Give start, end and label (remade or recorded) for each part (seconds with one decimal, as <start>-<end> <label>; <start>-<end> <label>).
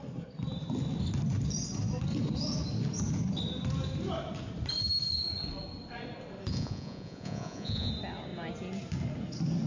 0.0-6.5 recorded; 6.5-7.9 remade; 7.9-9.7 recorded